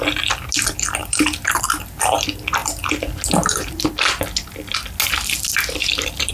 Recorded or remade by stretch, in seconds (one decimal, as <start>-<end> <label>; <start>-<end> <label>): 0.0-1.0 recorded; 1.0-1.6 remade; 1.6-6.3 recorded